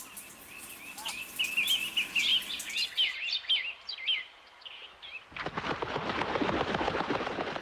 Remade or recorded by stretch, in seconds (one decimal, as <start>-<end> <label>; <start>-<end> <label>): 0.0-7.6 recorded